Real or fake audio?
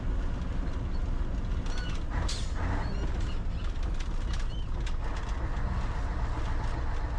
real